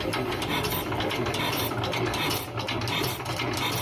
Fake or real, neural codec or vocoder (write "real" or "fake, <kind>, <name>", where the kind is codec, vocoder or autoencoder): real